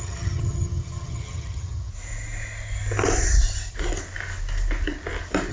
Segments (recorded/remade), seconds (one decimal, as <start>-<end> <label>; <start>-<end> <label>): 0.0-1.9 remade; 1.9-5.5 recorded